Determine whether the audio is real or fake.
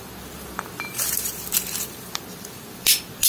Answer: fake